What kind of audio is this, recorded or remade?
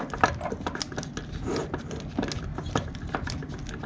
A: recorded